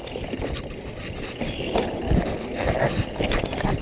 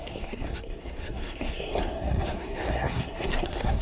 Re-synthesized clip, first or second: second